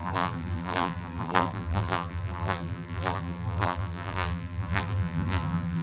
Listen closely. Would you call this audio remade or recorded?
remade